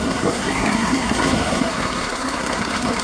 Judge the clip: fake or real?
fake